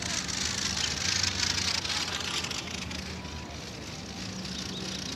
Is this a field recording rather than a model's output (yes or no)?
yes